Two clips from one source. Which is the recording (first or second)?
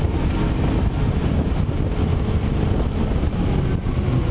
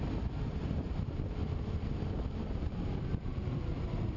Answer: first